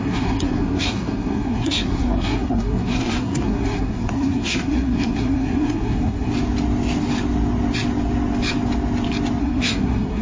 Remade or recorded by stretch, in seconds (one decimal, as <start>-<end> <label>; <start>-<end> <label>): 0.0-6.3 remade; 6.3-9.4 recorded; 9.4-10.2 remade